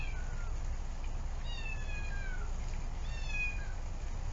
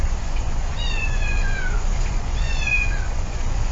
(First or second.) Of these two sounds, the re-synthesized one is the second